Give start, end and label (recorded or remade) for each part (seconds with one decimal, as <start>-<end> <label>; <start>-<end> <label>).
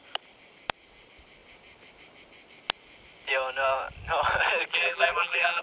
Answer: 0.0-4.7 recorded; 4.7-5.6 remade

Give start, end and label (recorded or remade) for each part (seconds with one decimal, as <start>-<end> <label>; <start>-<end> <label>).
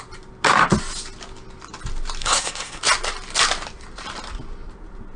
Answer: 0.0-2.2 recorded; 2.2-2.8 remade; 2.8-5.2 recorded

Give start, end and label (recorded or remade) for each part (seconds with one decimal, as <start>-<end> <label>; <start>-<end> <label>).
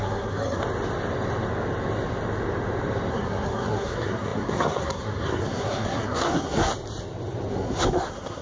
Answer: 0.0-0.6 remade; 0.6-3.1 recorded; 3.1-6.7 remade; 6.7-7.5 recorded; 7.5-8.4 remade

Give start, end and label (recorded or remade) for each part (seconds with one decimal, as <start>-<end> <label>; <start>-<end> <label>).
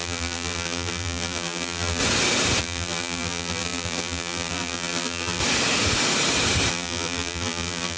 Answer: 0.0-2.0 remade; 2.0-2.6 recorded; 2.6-5.4 remade; 5.4-6.7 recorded; 6.7-8.0 remade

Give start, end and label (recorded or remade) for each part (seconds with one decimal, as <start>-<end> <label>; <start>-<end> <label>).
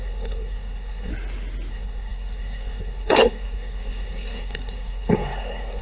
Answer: 0.0-1.1 remade; 1.1-1.7 recorded; 1.7-5.8 remade